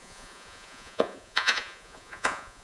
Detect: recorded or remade remade